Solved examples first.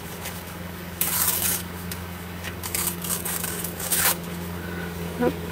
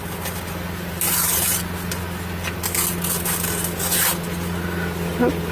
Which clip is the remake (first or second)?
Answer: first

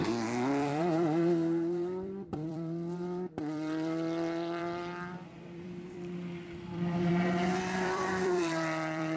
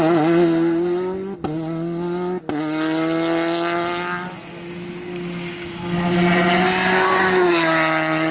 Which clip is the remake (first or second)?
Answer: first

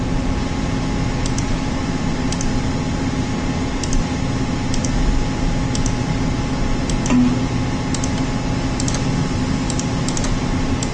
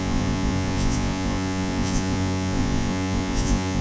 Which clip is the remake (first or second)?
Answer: second